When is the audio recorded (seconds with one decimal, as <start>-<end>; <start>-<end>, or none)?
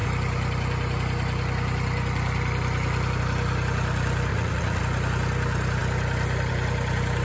0.0-4.3; 4.8-7.2